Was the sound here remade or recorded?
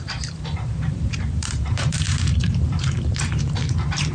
remade